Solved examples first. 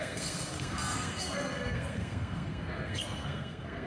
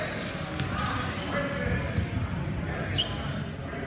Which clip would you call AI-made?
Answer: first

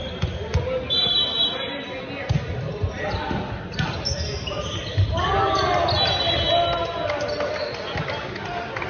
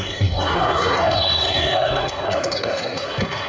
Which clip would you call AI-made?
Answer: second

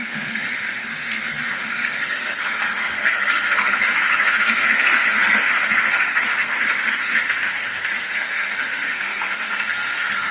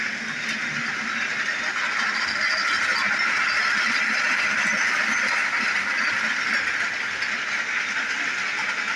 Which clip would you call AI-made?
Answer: first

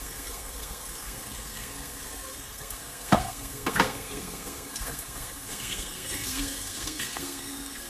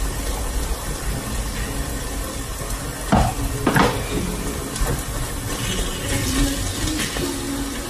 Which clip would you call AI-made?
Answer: first